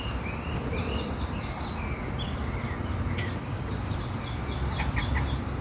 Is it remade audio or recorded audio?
recorded